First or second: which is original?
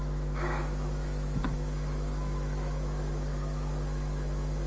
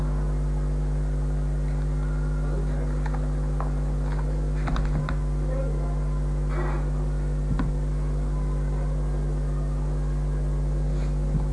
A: second